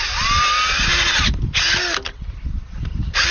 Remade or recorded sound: recorded